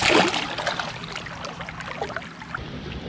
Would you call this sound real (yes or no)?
yes